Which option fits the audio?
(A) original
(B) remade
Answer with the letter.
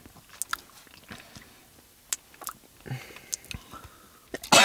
A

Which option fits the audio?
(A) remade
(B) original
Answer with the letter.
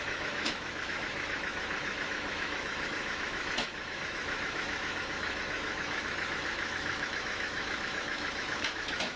A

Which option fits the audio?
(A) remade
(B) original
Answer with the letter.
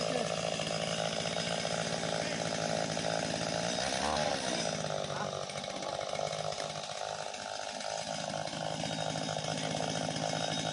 B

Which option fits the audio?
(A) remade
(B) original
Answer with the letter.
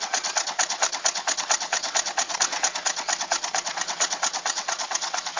A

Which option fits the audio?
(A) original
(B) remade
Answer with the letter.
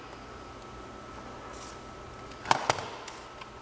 A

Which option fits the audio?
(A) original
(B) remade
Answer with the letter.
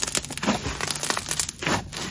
A